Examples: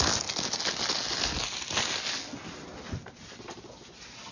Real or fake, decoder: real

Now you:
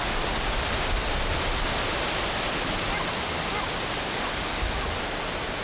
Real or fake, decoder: real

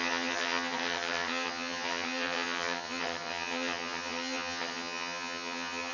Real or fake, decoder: fake, vocoder, HiFi-GAN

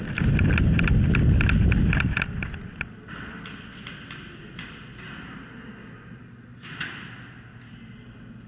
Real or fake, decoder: real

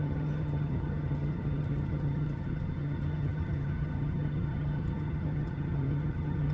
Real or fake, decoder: fake, vocoder, HiFi-GAN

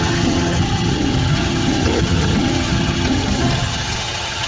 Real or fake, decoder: fake, vocoder, HiFi-GAN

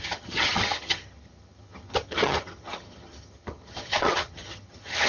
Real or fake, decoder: fake, vocoder, HiFi-GAN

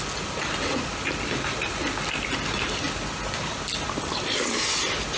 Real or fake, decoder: real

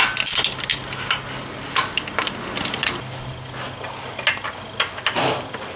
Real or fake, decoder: real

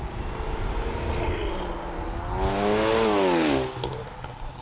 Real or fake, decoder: real